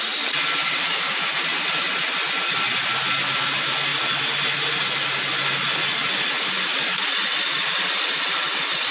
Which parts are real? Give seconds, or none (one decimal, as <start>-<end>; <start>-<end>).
0.0-0.6; 1.4-8.9